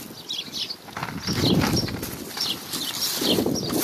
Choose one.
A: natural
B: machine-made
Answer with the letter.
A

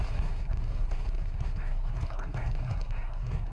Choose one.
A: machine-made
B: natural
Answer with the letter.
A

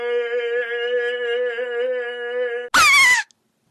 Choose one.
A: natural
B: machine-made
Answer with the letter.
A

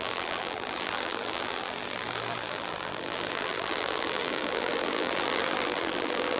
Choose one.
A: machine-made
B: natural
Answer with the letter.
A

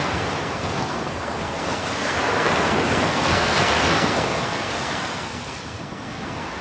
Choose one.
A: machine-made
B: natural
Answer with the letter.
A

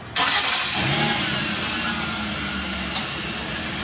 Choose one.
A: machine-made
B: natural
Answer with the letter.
B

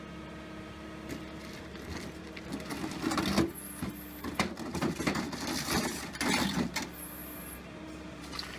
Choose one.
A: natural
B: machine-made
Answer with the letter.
A